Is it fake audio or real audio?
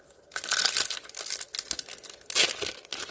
real